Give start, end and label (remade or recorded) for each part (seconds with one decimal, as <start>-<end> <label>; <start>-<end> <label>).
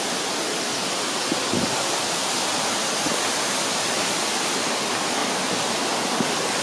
0.0-5.2 recorded; 5.2-5.7 remade; 5.7-6.6 recorded